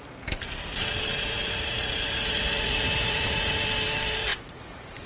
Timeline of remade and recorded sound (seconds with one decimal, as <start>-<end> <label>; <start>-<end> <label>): 0.0-1.1 recorded; 1.1-3.6 remade; 3.6-4.3 recorded; 4.3-5.1 remade